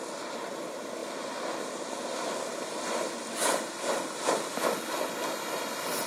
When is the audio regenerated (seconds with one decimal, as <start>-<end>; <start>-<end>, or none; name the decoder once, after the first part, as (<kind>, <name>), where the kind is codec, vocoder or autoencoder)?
none